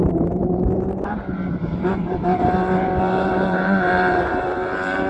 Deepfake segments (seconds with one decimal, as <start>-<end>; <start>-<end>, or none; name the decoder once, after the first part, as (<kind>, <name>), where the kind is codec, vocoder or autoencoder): 0.0-5.1 (vocoder, BigVGAN v2)